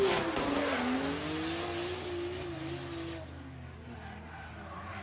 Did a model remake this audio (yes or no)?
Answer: no